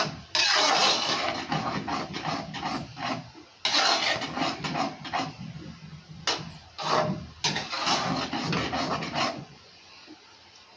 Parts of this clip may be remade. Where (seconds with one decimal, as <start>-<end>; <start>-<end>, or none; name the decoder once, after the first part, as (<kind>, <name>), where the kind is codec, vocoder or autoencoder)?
8.9-10.0 (vocoder, Vocos)